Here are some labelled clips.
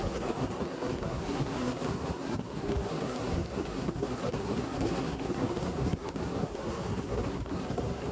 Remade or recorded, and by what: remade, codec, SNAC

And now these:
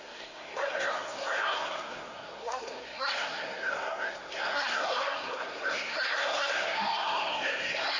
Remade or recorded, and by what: remade, codec, SNAC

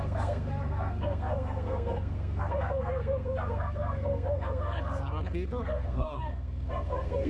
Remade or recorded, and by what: remade, codec, SNAC